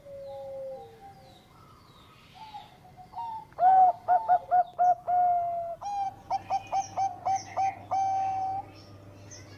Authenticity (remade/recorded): recorded